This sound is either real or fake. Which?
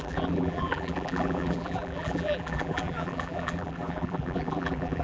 fake